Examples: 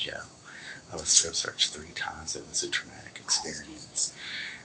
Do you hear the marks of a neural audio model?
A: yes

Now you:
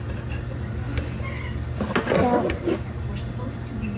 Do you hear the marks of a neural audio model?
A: no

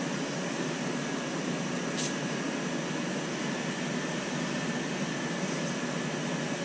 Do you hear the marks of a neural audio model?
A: no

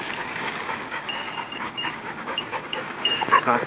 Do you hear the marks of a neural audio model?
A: yes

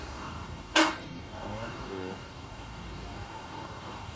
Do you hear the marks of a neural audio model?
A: yes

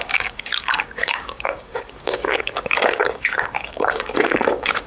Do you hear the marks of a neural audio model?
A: yes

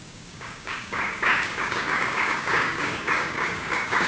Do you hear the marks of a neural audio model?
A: yes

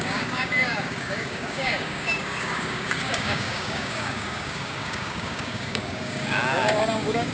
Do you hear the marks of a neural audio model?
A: yes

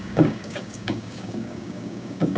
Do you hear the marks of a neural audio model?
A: yes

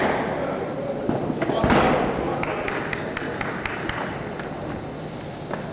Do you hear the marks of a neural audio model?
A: no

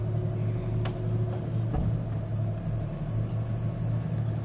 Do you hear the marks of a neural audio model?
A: no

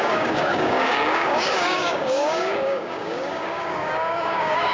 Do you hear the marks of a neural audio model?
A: yes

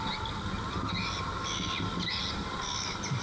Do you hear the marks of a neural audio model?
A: no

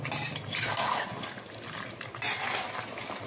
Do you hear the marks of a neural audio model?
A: no